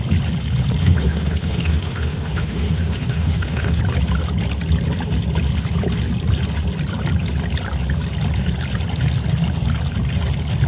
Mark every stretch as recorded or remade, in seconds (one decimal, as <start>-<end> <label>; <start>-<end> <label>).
0.0-0.8 recorded; 0.8-3.8 remade; 3.8-10.7 recorded